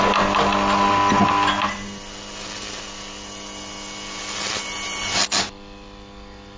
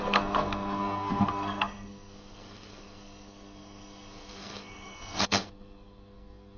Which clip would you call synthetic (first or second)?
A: second